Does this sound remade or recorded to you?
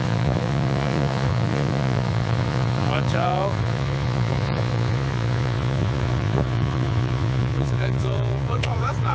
remade